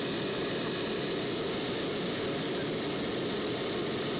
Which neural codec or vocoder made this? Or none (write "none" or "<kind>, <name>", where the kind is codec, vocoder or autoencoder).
none